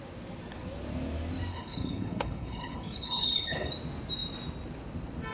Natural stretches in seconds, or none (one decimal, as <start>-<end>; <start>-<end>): 0.0-1.5; 3.7-5.3